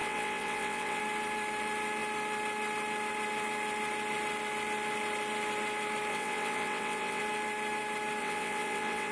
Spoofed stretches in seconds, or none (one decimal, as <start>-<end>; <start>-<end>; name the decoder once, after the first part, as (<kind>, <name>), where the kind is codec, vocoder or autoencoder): 0.0-1.0 (vocoder, WaveNeXt); 6.1-7.2; 8.2-9.1